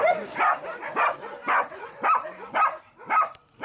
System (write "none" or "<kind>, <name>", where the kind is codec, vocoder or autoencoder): none